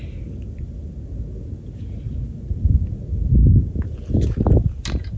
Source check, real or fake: real